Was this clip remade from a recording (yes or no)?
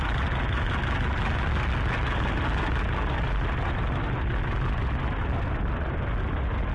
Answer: no